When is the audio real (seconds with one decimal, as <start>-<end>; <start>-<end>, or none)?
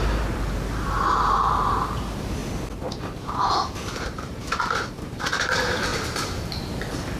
2.4-3.2